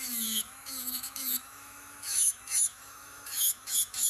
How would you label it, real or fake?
fake